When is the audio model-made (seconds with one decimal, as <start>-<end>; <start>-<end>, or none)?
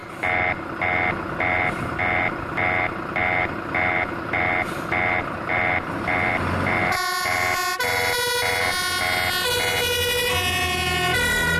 none